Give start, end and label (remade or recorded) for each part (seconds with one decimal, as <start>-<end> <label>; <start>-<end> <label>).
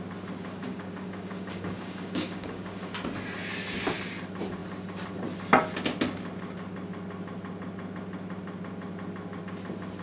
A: 0.0-0.6 recorded; 0.6-2.9 remade; 2.9-10.0 recorded